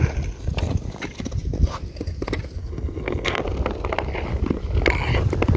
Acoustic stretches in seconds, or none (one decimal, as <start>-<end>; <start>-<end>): 0.0-2.6; 3.4-5.6